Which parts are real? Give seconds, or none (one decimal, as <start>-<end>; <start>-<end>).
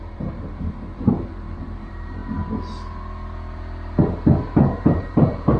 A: 2.2-4.8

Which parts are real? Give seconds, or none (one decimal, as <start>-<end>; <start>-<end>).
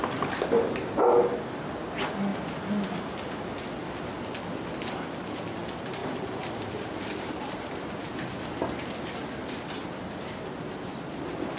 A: 0.0-6.0; 8.1-11.6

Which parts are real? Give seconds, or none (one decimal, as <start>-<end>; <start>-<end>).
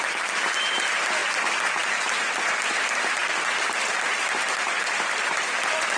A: 0.0-3.2; 5.3-6.0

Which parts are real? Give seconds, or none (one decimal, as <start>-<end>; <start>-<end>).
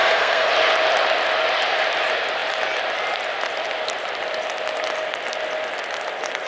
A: 0.5-6.5